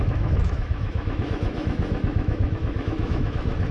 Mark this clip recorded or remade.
remade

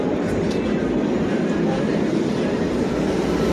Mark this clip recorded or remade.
recorded